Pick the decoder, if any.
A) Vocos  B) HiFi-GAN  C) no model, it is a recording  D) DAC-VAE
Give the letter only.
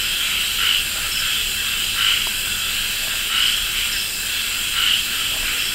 C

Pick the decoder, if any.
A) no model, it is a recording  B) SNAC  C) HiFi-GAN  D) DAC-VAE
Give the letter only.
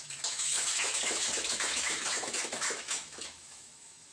D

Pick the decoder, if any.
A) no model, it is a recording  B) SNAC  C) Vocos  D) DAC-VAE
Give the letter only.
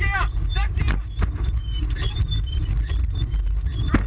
A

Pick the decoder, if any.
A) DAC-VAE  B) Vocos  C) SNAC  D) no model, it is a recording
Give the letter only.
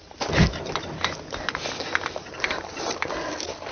D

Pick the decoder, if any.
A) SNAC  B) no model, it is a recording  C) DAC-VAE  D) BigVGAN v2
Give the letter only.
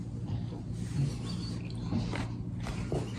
B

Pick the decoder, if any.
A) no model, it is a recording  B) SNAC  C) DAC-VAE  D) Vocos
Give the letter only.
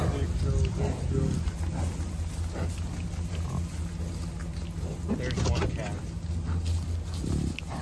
A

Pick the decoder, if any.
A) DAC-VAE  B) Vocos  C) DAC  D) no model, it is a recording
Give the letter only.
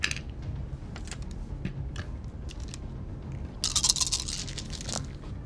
D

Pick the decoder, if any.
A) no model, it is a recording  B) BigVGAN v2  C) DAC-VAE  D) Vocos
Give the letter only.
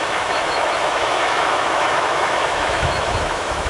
C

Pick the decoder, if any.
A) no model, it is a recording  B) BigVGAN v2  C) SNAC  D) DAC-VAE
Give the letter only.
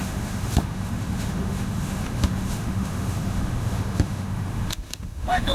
D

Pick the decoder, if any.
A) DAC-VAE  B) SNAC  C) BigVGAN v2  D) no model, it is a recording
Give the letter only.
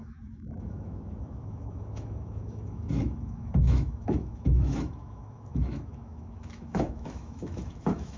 A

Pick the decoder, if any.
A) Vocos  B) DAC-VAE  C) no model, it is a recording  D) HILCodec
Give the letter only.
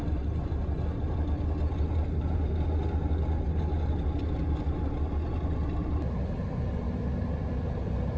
C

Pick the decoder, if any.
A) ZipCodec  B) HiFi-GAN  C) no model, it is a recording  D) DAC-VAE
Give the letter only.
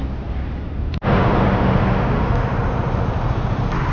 C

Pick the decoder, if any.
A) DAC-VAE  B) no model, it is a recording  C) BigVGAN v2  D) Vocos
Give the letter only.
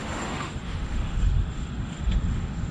A